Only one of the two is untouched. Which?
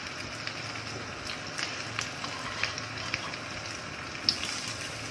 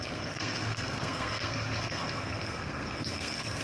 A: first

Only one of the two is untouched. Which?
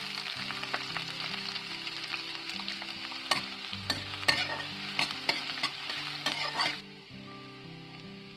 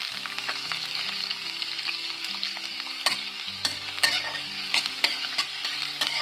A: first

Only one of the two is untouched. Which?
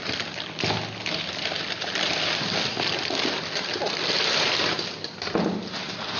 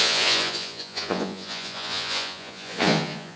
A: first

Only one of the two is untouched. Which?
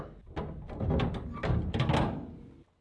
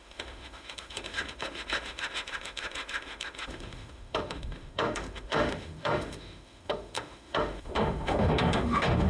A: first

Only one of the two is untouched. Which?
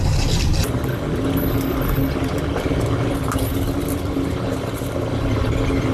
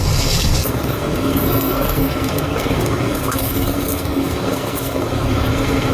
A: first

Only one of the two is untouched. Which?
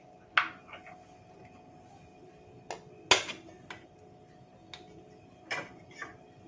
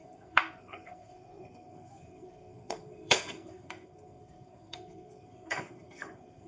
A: first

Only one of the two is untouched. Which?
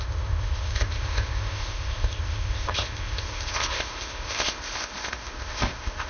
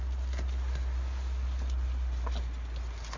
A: second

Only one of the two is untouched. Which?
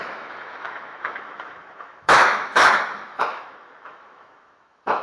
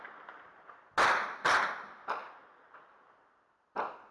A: second